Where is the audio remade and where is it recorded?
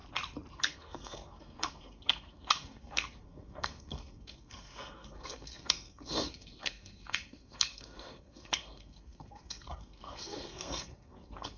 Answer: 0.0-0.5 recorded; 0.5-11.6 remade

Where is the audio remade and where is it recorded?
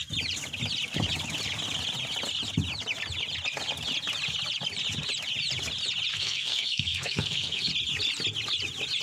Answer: 0.0-6.1 recorded; 6.1-7.7 remade; 7.7-9.0 recorded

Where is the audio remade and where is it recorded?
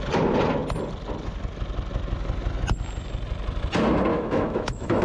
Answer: 0.0-4.1 recorded; 4.1-5.0 remade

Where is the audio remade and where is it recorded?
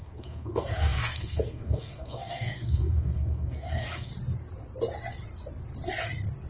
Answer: 0.0-4.1 remade; 4.1-6.5 recorded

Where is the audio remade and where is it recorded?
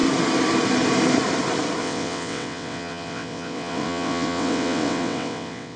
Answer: 0.0-1.8 recorded; 1.8-5.8 remade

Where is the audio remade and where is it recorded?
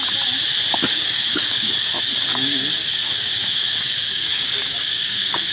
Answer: 0.0-0.9 recorded; 0.9-1.9 remade; 1.9-2.3 recorded; 2.3-5.5 remade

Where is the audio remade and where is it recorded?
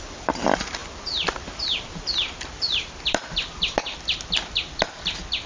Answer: 0.0-5.5 remade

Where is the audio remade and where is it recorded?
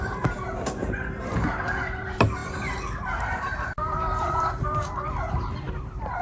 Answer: 0.0-6.2 remade